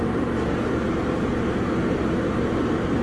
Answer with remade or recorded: recorded